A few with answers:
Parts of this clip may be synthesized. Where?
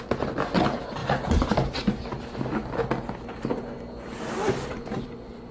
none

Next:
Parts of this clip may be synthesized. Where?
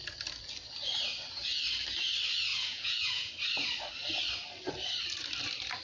2.5-3.3 (vocoder, Vocos)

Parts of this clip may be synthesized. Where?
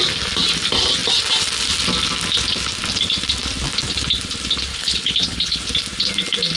4.7-5.6 (codec, HILCodec)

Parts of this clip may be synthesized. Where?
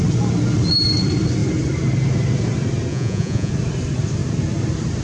2.9-3.5 (vocoder, Vocos)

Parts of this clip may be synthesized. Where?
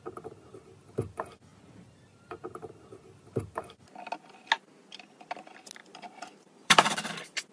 5.8-7.5 (vocoder, BigVGAN v2)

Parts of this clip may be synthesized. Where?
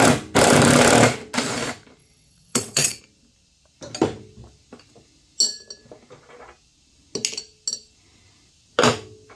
2.0-3.0 (vocoder, WaveNeXt)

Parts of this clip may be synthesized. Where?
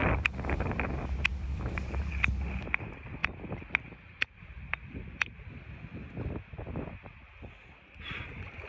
0.0-0.9 (vocoder, BigVGAN v2); 1.3-2.1